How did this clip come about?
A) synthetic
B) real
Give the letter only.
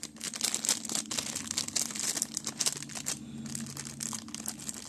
B